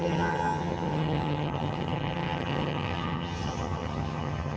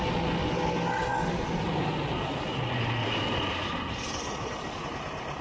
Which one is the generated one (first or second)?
first